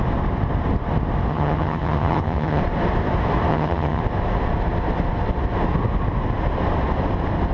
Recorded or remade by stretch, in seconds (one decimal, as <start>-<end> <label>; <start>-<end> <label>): 0.0-1.3 recorded; 1.3-2.6 remade; 2.6-3.5 recorded; 3.5-4.0 remade; 4.0-7.5 recorded